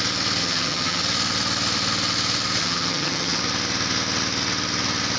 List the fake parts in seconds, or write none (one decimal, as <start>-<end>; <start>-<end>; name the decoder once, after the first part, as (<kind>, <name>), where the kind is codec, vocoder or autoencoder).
0.4-1.0 (vocoder, HiFi-GAN); 2.6-3.4